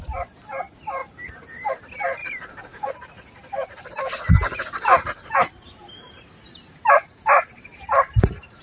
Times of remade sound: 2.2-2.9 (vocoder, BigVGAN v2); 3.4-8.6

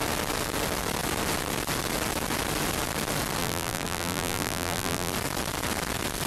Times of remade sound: 3.4-5.1 (vocoder, BigVGAN v2)

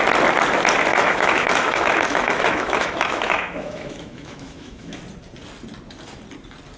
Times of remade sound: 0.9-5.0 (autoencoder, DAC-VAE)

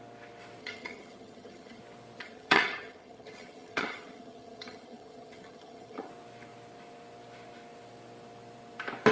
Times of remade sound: 0.6-1.8 (vocoder, HiFi-GAN); 2.2-6.1

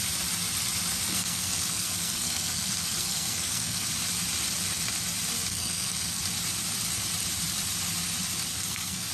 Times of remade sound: 1.1-3.9 (codec, SNAC); 5.5-6.2; 8.5-9.1

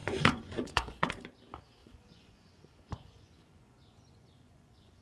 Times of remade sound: 0.0-1.1 (vocoder, Vocos); 1.8-5.0

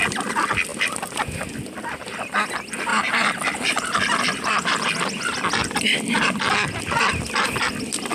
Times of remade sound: 0.7-1.2 (vocoder, BigVGAN v2); 2.9-4.8